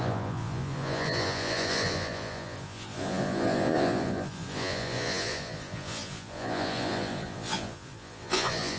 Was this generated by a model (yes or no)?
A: yes